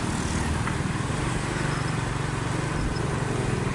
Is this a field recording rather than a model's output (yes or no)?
yes